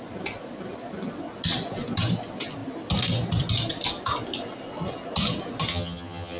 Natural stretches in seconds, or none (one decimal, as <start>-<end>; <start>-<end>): 0.0-5.7